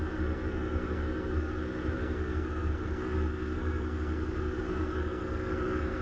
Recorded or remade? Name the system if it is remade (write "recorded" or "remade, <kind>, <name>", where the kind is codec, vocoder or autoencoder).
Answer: remade, codec, SNAC